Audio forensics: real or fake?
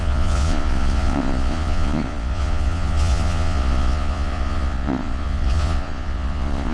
fake